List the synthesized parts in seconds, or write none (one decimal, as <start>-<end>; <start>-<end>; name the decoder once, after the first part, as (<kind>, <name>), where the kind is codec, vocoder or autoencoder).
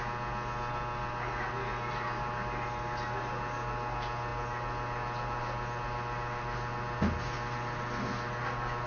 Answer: none